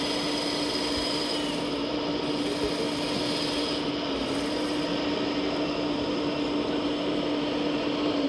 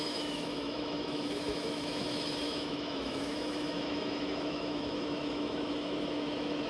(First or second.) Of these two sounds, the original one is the first